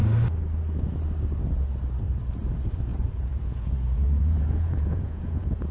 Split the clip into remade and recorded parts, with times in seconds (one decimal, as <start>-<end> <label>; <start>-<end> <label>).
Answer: 0.0-2.9 recorded; 2.9-5.7 remade